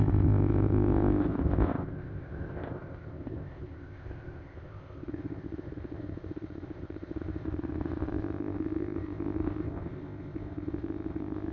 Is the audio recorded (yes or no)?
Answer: no